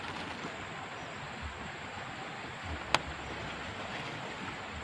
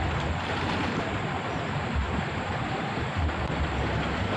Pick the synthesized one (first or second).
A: second